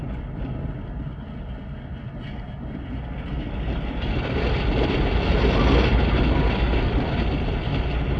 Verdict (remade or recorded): recorded